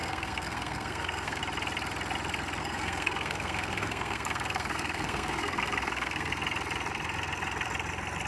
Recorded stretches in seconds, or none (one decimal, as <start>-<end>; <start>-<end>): 1.4-2.6; 6.3-8.3